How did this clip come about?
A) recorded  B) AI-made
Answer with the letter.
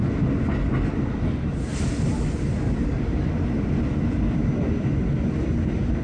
A